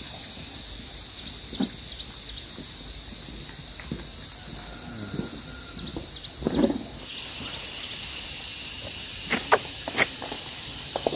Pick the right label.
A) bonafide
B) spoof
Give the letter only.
A